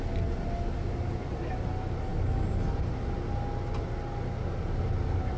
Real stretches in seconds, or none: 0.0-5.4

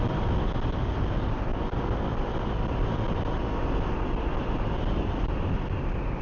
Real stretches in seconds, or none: 0.0-6.2

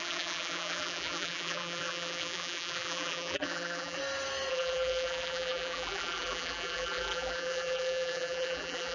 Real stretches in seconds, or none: 4.0-4.5

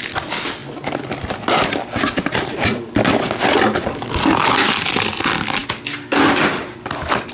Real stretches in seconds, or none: 0.0-7.3

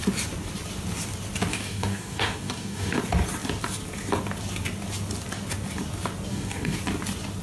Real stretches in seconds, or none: 0.0-1.5; 3.0-6.3; 6.8-7.4

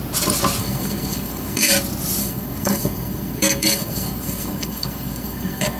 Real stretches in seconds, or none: 0.0-0.6; 1.7-2.2